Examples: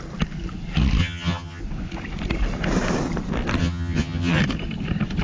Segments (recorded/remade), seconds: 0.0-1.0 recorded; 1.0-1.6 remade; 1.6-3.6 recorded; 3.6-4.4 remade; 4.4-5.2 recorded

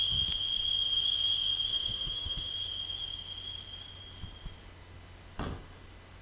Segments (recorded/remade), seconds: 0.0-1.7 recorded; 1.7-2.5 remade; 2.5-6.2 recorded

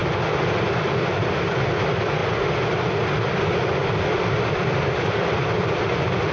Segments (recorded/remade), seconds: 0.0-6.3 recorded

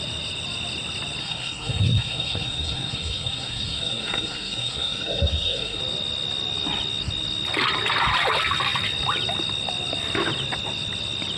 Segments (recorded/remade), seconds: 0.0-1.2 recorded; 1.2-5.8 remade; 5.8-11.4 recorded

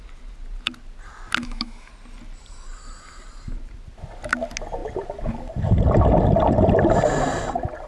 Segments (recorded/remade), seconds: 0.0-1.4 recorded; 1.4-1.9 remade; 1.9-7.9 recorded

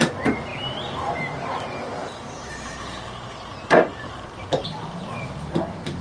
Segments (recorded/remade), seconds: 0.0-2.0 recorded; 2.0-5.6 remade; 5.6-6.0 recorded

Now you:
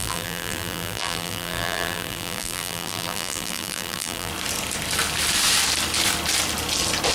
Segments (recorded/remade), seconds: 0.0-4.3 remade; 4.3-7.1 recorded

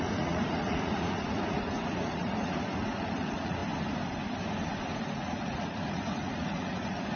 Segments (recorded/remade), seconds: 0.0-3.6 remade; 3.6-5.1 recorded; 5.1-7.2 remade